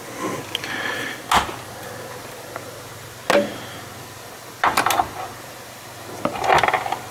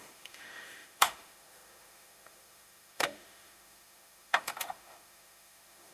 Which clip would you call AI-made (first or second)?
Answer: second